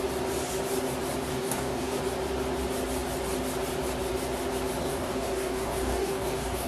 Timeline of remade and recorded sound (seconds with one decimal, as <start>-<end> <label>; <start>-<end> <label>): 0.0-1.3 recorded; 1.3-2.0 remade; 2.0-4.8 recorded; 4.8-6.7 remade

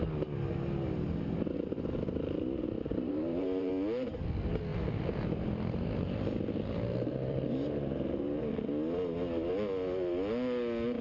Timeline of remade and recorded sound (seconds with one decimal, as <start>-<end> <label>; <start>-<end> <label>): 0.0-2.9 recorded; 2.9-3.7 remade; 3.7-4.7 recorded; 4.7-8.5 remade; 8.5-11.0 recorded

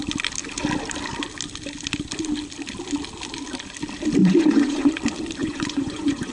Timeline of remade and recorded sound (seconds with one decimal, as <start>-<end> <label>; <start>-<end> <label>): 0.0-4.2 recorded; 4.2-4.9 remade; 4.9-5.4 recorded; 5.4-6.3 remade

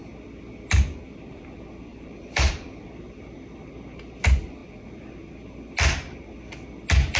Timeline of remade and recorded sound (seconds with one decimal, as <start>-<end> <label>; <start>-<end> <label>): 0.0-1.9 recorded; 1.9-2.5 remade; 2.5-7.2 recorded

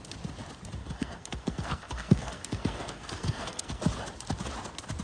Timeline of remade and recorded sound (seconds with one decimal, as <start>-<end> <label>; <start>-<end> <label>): 0.0-0.8 recorded; 0.8-3.8 remade; 3.8-5.0 recorded

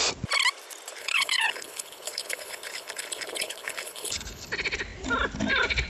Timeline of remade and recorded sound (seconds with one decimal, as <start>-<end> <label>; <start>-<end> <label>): 0.0-1.0 recorded; 1.0-4.5 remade; 4.5-5.9 recorded

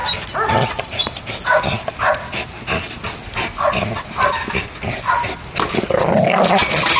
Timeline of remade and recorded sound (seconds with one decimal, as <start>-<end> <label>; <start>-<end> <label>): 0.0-7.0 recorded

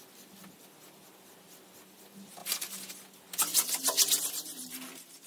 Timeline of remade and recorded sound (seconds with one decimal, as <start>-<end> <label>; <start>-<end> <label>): 0.0-5.3 recorded